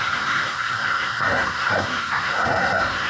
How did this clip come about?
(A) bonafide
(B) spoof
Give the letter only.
B